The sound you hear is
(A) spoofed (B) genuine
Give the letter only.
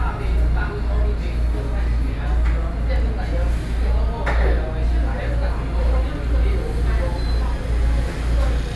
B